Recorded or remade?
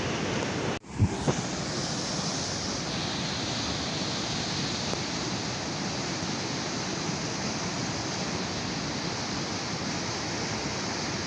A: recorded